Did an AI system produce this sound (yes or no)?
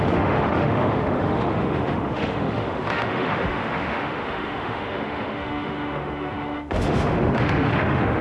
yes